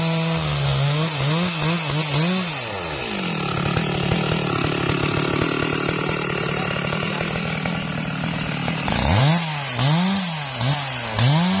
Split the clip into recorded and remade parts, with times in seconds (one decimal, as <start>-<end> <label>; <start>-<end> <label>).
0.0-8.6 recorded; 8.6-9.2 remade; 9.2-11.6 recorded